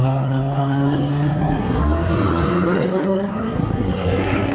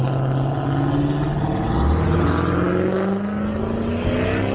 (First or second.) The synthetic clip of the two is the first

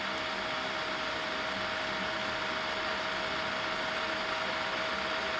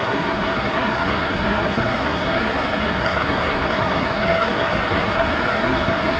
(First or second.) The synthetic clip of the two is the second